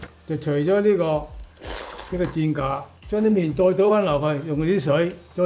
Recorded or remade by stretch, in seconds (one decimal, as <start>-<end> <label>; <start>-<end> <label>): 0.0-1.4 recorded; 1.4-3.9 remade; 3.9-5.5 recorded